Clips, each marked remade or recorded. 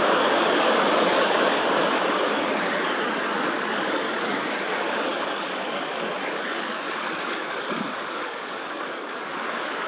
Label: remade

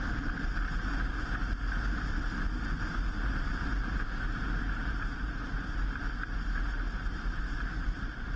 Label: recorded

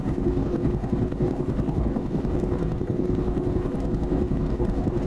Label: remade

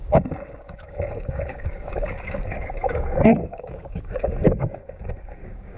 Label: remade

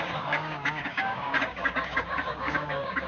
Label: remade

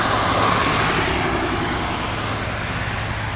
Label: recorded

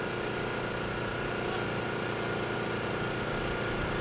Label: recorded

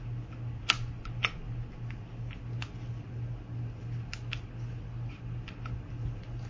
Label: recorded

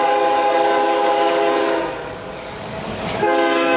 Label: remade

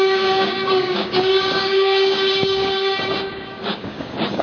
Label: remade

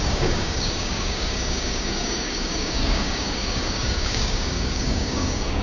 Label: remade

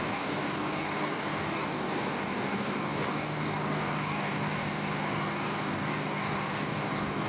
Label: remade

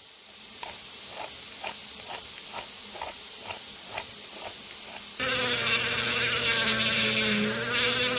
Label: recorded